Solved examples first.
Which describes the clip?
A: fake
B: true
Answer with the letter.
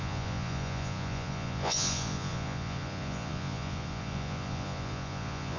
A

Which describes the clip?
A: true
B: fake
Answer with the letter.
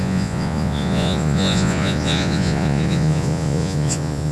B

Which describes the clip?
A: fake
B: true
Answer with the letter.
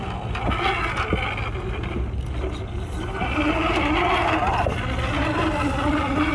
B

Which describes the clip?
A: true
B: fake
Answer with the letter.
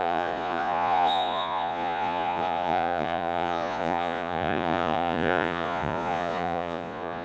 B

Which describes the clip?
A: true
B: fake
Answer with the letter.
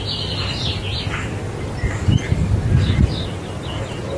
A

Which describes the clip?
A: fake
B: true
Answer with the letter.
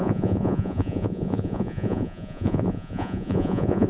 A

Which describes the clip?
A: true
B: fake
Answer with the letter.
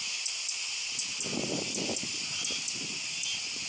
A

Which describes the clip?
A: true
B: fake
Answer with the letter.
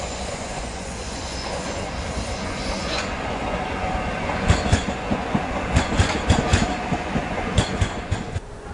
B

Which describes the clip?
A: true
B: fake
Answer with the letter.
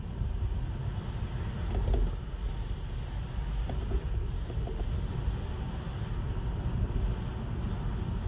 A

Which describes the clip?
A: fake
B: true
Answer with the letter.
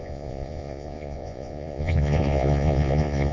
A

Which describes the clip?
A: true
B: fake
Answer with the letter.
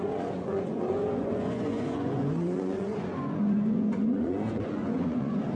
B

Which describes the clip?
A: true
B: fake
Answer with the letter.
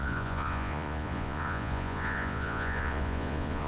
B